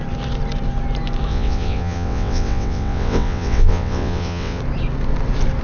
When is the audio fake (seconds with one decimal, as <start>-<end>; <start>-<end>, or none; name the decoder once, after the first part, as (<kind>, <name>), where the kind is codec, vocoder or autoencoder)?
1.3-4.6 (vocoder, WaveNeXt)